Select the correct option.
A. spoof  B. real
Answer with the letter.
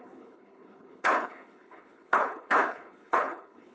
A